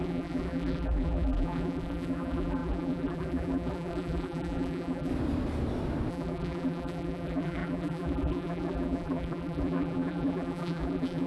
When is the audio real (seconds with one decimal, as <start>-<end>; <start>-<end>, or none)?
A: 5.1-6.1